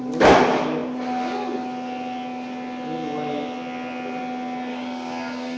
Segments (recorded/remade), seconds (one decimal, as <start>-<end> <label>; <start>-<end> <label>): 0.0-4.7 recorded; 4.7-5.6 remade